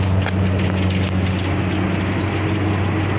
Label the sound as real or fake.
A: real